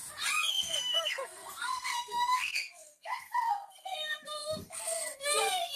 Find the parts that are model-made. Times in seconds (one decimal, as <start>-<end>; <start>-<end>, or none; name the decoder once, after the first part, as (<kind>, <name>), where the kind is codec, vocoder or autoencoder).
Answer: 0.5-5.8 (codec, SNAC)